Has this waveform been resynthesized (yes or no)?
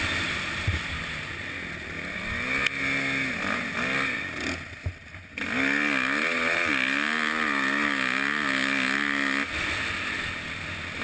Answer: no